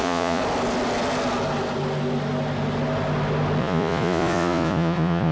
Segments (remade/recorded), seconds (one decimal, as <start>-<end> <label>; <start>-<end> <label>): 0.0-0.4 remade; 0.4-3.6 recorded; 3.6-5.3 remade